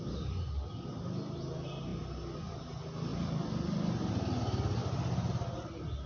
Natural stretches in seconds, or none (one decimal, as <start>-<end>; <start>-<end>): 0.0-6.1

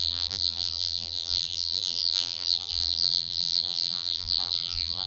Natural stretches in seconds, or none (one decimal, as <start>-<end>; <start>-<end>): none

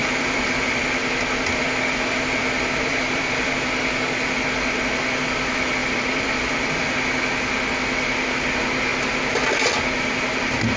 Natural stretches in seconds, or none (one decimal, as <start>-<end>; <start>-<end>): 0.8-2.9; 3.5-5.8; 6.9-10.8

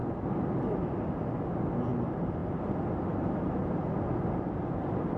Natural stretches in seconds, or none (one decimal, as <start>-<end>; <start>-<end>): 0.0-5.2

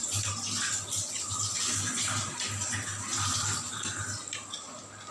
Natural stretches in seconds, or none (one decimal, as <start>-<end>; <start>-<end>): none

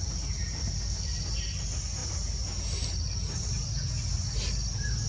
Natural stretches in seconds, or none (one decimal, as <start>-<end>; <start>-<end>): 0.0-5.1